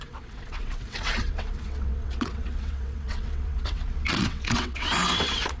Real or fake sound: fake